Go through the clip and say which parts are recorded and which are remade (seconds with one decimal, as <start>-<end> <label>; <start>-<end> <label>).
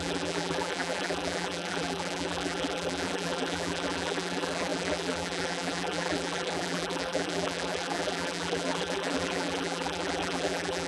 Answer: 0.0-10.9 remade